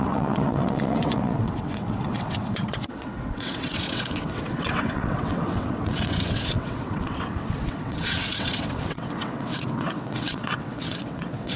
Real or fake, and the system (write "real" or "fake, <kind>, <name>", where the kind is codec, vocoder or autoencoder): fake, vocoder, WaveNeXt